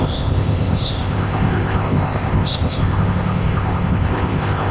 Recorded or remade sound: remade